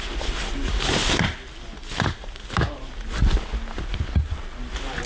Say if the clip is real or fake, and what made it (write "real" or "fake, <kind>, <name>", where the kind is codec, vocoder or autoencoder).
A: real